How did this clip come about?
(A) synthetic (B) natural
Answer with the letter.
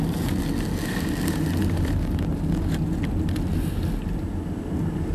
B